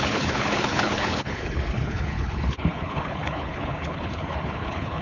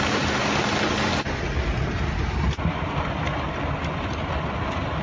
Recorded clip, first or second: second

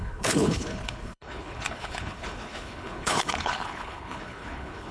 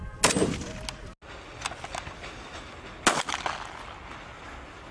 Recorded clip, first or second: second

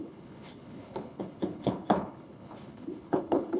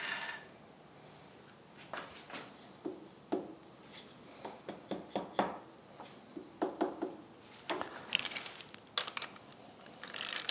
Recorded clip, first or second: second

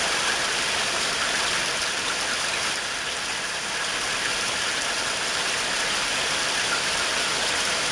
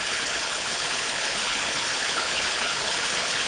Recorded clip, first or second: first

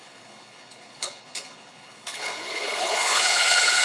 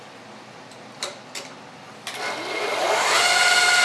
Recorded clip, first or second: second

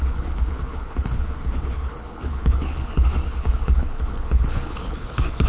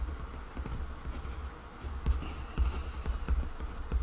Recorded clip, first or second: second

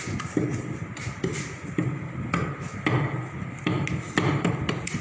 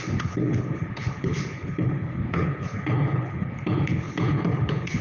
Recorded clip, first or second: first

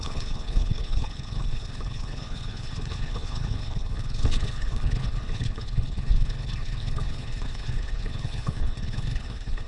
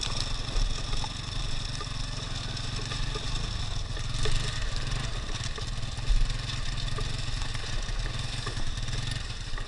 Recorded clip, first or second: second